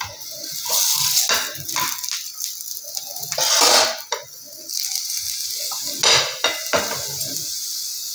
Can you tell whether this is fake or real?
real